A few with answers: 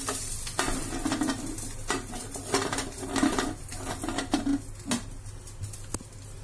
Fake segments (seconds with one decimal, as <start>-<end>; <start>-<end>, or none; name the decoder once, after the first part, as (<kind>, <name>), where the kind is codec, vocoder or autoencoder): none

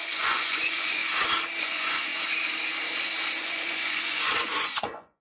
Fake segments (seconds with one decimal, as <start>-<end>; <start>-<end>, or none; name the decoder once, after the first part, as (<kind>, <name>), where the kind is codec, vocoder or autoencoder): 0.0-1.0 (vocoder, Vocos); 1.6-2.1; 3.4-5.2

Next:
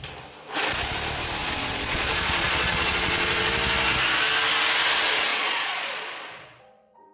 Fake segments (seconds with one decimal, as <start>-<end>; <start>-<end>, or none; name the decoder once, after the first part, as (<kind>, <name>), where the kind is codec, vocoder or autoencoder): 1.4-3.5 (vocoder, Vocos); 5.3-7.1

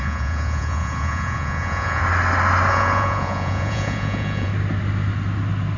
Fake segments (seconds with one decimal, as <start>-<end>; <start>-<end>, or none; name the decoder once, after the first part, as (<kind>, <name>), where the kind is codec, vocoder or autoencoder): 0.0-2.0 (vocoder, Vocos); 2.7-4.5

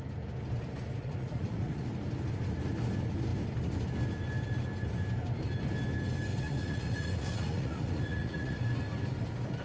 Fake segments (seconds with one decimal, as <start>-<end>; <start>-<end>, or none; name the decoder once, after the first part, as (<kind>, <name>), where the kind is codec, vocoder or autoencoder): 1.0-1.9 (vocoder, Vocos); 6.3-8.6